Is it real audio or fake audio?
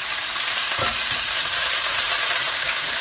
fake